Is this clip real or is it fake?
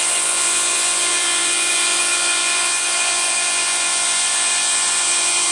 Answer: fake